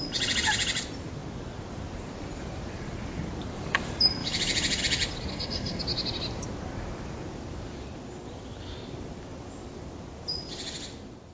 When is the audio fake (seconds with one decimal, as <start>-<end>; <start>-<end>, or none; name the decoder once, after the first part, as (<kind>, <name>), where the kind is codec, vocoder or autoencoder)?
5.3-5.8 (codec, SNAC)